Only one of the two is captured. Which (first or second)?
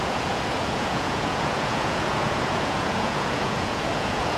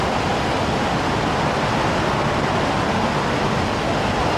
second